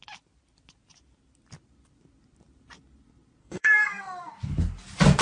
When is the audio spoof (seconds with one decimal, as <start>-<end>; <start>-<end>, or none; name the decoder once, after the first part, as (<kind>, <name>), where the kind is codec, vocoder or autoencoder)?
3.4-4.3 (codec, SNAC)